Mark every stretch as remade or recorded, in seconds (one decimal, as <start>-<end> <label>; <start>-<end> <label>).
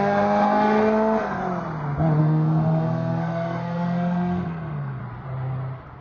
0.0-1.4 remade; 1.4-2.2 recorded; 2.2-5.0 remade; 5.0-6.0 recorded